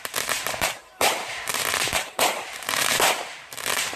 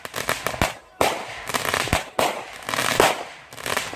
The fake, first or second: first